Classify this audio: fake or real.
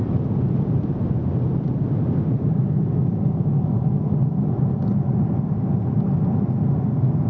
real